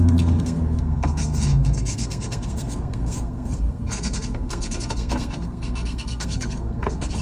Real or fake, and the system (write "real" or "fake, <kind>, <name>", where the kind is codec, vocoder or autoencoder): fake, codec, SNAC